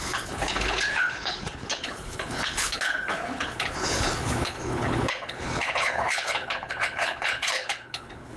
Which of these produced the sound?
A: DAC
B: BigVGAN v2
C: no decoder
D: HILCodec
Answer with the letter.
D